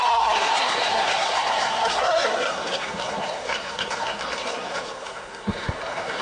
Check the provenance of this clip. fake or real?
fake